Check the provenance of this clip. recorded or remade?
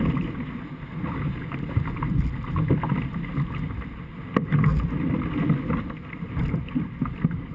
recorded